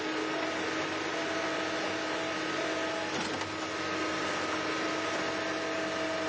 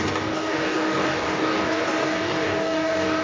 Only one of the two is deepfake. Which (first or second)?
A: second